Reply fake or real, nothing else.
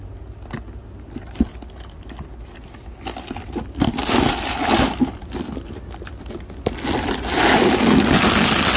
real